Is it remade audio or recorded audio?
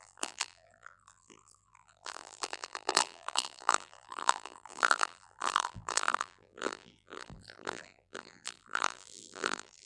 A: remade